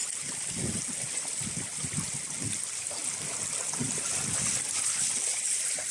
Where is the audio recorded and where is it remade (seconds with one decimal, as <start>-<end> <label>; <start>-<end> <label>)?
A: 0.0-5.9 recorded